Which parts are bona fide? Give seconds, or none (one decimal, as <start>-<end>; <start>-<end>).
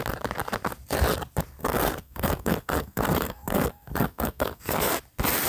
0.0-1.6; 4.9-5.5